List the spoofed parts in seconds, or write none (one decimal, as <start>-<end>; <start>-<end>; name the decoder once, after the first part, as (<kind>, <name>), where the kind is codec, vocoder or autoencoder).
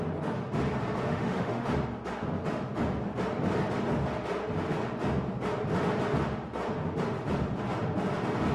1.1-1.7 (autoencoder, DAC-VAE)